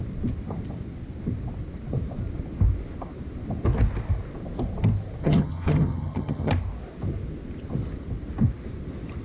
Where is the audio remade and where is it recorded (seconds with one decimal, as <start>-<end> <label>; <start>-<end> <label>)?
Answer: 0.0-5.2 recorded; 5.2-6.5 remade; 6.5-9.2 recorded